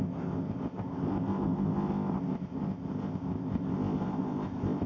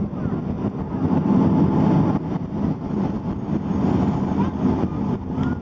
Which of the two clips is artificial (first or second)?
first